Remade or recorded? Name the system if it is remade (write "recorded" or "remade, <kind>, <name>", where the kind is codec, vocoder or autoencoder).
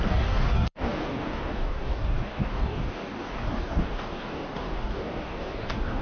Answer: remade, codec, DAC